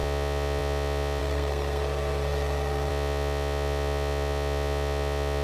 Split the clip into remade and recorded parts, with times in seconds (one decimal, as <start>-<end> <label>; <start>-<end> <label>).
0.0-1.2 recorded; 1.2-2.9 remade; 2.9-5.4 recorded